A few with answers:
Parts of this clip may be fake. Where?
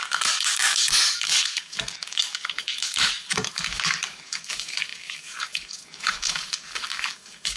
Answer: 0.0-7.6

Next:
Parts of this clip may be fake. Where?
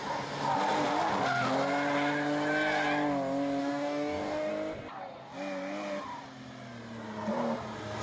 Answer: 3.6-4.5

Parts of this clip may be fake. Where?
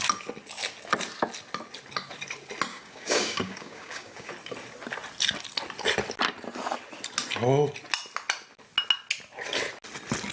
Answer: 2.7-4.3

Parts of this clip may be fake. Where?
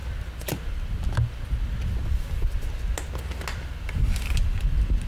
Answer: none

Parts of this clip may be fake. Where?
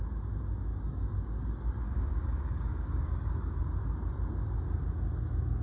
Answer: 0.7-3.6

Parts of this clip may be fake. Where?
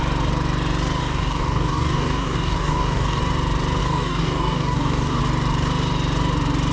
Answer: 1.0-3.2; 3.8-5.2